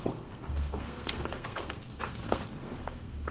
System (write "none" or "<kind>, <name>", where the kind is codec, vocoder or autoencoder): codec, SNAC